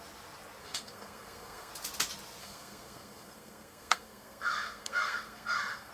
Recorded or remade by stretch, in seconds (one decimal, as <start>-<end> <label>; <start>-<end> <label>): 0.0-0.6 recorded; 0.6-1.7 remade; 1.7-2.4 recorded; 2.4-5.9 remade